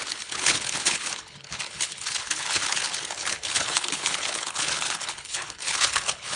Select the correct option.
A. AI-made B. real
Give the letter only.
A